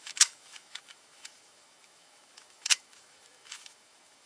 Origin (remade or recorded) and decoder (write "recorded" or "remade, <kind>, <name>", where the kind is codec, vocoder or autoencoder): remade, autoencoder, DAC-VAE